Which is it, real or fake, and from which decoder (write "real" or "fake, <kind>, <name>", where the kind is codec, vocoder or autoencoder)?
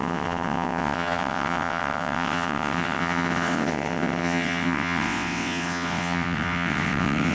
fake, vocoder, WaveNeXt